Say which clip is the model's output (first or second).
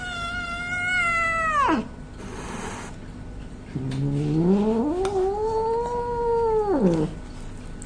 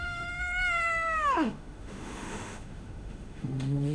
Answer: second